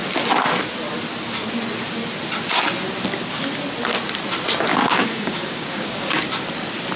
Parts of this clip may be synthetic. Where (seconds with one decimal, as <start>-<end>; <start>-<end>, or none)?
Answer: 4.7-6.2